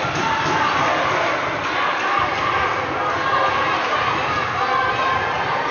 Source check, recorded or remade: recorded